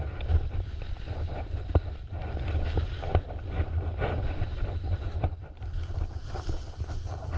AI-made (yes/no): no